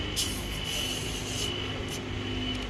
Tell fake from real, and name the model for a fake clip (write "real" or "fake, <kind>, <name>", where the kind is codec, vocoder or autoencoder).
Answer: real